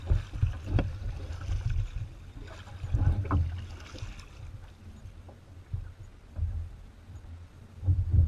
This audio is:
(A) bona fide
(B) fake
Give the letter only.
A